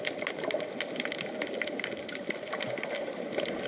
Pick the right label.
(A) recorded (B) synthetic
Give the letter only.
A